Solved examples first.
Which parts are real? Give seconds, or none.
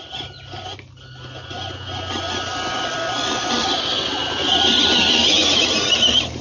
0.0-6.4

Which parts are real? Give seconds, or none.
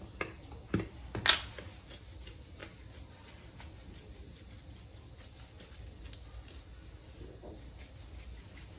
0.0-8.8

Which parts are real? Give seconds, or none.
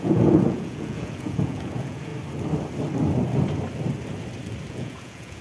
2.1-4.7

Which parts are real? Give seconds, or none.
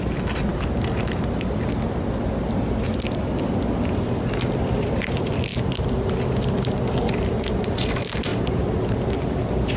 0.0-9.8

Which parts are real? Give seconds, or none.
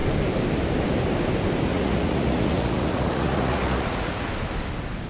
0.0-1.7; 4.3-5.1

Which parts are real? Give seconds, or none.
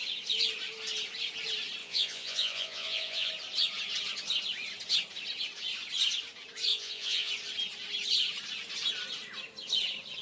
0.0-1.8; 3.3-6.7; 7.3-10.2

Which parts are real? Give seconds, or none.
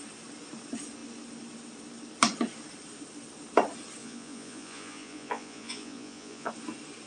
0.0-4.0; 6.5-7.1